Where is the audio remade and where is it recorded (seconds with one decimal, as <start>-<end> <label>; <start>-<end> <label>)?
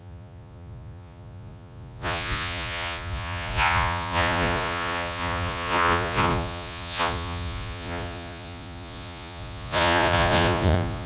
0.0-11.1 remade